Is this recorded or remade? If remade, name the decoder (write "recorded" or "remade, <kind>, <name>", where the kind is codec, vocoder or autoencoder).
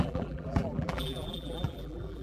remade, vocoder, BigVGAN v2